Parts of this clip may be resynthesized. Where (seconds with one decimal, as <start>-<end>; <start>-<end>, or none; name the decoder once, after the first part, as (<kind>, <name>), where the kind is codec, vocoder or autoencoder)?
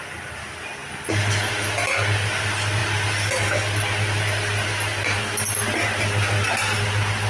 none